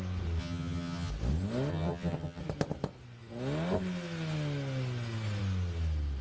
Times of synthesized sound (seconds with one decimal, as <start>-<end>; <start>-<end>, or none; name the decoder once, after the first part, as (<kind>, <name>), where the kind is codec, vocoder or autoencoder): 0.4-1.1 (vocoder, HiFi-GAN); 1.7-2.4